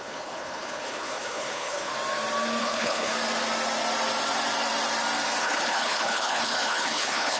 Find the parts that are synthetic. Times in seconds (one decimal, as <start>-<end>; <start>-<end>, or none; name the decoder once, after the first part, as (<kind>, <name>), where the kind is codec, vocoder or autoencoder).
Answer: 0.0-1.9 (codec, HILCodec); 2.6-3.1; 5.4-7.4